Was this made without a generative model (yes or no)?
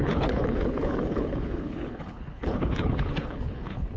no